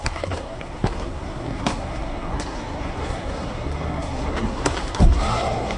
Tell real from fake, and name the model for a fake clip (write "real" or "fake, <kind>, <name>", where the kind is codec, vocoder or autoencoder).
fake, codec, SNAC